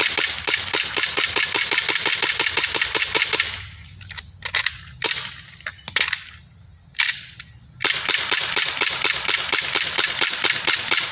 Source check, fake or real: real